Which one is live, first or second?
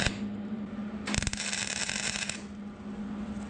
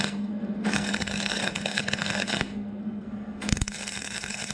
first